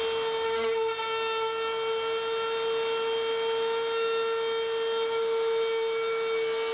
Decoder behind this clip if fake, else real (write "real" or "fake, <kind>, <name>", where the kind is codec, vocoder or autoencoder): real